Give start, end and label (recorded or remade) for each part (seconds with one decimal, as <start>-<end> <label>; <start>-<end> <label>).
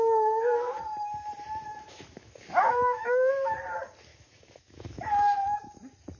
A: 0.0-1.7 recorded; 1.7-3.3 remade; 3.3-4.1 recorded; 4.1-5.7 remade; 5.7-6.2 recorded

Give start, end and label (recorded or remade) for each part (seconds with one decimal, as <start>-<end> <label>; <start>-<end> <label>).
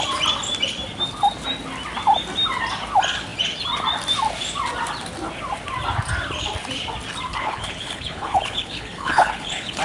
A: 0.0-7.3 recorded; 7.3-9.8 remade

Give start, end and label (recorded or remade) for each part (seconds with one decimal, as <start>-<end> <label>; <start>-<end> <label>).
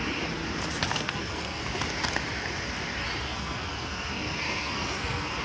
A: 0.0-0.9 recorded; 0.9-1.6 remade; 1.6-3.3 recorded; 3.3-5.4 remade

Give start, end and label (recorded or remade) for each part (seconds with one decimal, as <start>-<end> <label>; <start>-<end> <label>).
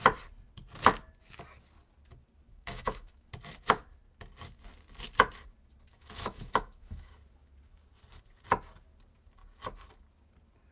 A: 0.0-2.5 recorded; 2.5-3.3 remade; 3.3-5.9 recorded; 5.9-7.1 remade; 7.1-10.7 recorded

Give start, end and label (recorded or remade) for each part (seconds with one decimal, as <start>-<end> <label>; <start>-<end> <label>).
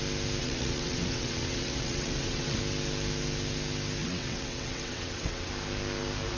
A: 0.0-0.4 recorded; 0.4-2.6 remade; 2.6-4.0 recorded; 4.0-5.5 remade; 5.5-6.4 recorded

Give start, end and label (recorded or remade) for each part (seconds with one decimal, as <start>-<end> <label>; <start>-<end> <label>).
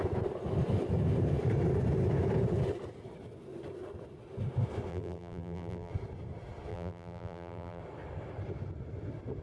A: 0.0-4.9 recorded; 4.9-5.9 remade; 5.9-6.7 recorded; 6.7-7.8 remade; 7.8-9.4 recorded